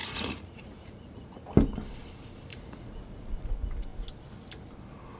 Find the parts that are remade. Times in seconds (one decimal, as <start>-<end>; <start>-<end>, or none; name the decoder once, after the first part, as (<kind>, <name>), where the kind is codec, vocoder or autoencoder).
0.0-1.4 (vocoder, Vocos); 2.5-3.5